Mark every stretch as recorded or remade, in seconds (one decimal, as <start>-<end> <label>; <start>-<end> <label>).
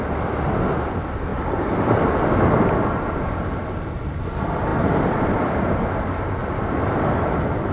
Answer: 0.0-7.7 recorded